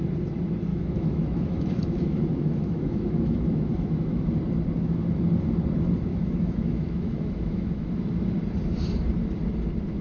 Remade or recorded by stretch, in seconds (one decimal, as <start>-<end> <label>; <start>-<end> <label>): 0.0-0.7 recorded; 0.7-4.3 remade; 4.3-6.1 recorded; 6.1-7.9 remade; 7.9-10.0 recorded